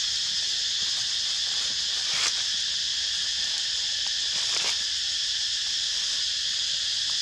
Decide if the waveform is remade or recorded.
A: recorded